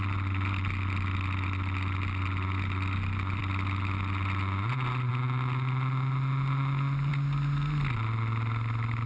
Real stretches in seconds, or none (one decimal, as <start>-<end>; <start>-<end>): 0.0-9.1